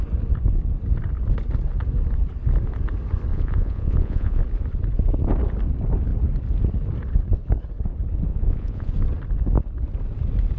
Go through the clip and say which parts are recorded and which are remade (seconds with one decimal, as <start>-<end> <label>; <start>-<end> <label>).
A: 0.0-3.3 recorded; 3.3-4.4 remade; 4.4-8.3 recorded; 8.3-8.9 remade; 8.9-10.6 recorded